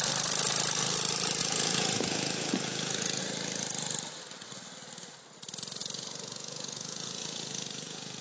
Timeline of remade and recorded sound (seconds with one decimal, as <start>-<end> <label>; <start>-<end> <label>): 0.0-1.4 recorded; 1.4-3.2 remade; 3.2-5.8 recorded; 5.8-8.2 remade